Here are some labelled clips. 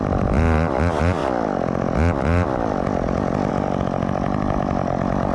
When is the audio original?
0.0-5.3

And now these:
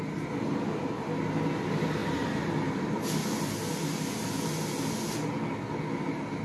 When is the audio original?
0.0-6.4